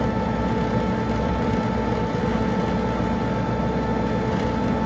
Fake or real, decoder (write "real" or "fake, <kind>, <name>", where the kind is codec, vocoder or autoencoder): real